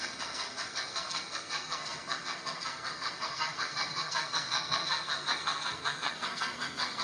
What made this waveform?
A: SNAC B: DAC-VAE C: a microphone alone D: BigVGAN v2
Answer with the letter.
A